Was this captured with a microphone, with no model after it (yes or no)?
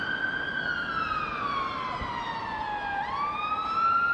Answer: yes